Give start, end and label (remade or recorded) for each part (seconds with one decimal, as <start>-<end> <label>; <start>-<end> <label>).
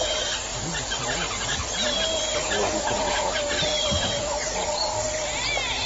0.0-0.5 recorded; 0.5-1.7 remade; 1.7-3.7 recorded; 3.7-5.0 remade; 5.0-5.9 recorded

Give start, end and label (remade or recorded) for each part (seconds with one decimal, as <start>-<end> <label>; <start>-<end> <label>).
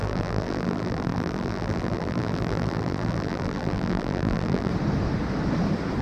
0.0-4.7 remade; 4.7-6.0 recorded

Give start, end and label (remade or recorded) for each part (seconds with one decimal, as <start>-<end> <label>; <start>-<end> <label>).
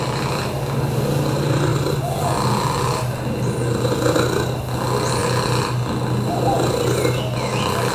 0.0-7.9 recorded